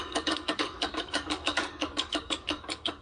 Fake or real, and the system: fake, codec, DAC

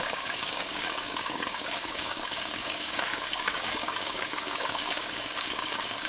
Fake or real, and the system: fake, codec, DAC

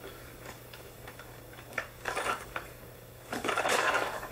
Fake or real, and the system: fake, codec, DAC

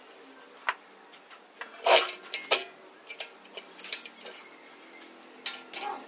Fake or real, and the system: real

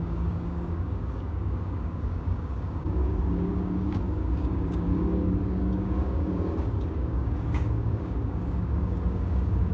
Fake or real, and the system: fake, codec, DAC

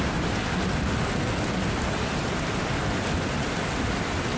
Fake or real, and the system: real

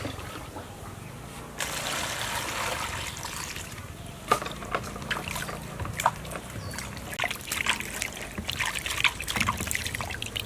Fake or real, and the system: real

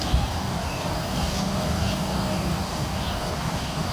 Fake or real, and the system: fake, codec, DAC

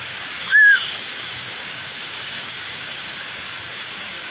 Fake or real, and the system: fake, codec, DAC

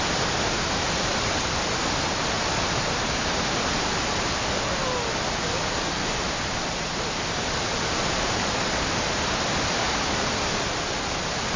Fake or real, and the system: real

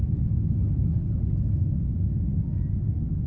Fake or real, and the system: real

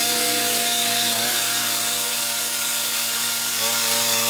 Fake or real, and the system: fake, codec, DAC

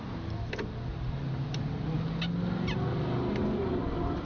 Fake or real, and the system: real